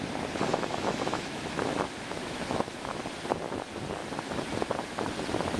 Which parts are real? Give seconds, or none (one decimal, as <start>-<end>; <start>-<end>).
0.0-0.5; 3.0-5.6